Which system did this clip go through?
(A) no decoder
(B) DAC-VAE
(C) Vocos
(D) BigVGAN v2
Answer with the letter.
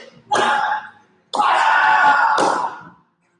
A